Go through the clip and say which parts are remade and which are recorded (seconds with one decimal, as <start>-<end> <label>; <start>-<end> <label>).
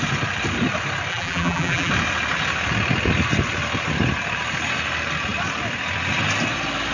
0.0-1.1 recorded; 1.1-1.9 remade; 1.9-6.9 recorded